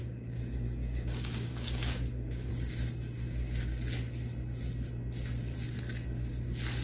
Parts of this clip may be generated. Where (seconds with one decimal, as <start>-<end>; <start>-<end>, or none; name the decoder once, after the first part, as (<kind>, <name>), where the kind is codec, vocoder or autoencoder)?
0.0-2.5 (codec, DAC)